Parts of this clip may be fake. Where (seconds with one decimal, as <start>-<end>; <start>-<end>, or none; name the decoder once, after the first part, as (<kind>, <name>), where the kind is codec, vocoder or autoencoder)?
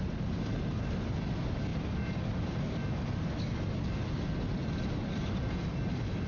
none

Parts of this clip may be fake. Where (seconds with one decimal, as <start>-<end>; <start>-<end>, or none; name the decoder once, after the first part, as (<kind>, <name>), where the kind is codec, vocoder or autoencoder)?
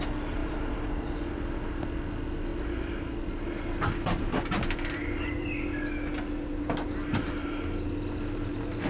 0.4-0.9 (vocoder, BigVGAN v2)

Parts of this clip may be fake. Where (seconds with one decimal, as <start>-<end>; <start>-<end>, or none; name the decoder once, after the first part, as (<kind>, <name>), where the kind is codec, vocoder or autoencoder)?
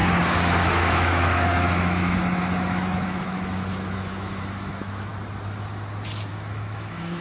0.6-5.1 (autoencoder, DAC-VAE); 6.3-7.2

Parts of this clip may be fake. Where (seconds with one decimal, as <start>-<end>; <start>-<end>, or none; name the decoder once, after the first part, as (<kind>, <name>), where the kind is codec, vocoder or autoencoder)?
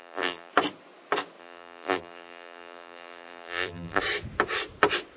0.0-0.5 (vocoder, BigVGAN v2); 1.4-4.0